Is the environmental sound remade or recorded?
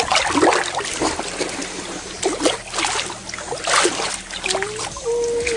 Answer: recorded